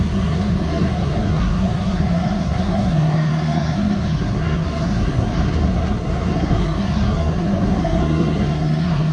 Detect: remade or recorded remade